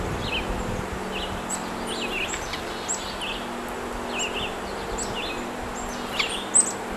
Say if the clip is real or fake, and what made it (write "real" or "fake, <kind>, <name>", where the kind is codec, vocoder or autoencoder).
real